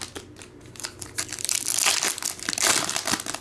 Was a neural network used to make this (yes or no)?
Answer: no